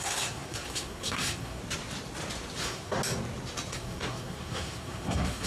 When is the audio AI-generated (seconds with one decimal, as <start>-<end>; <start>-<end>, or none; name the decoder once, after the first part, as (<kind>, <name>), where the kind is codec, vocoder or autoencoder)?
0.0-1.6 (codec, SNAC); 2.6-3.0; 3.7-5.5